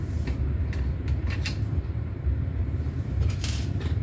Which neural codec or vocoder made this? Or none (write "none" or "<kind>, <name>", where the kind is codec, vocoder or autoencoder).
vocoder, BigVGAN v2